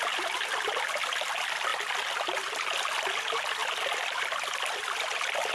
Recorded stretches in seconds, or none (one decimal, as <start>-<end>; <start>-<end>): 0.0-5.5